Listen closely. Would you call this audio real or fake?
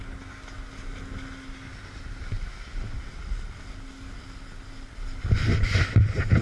real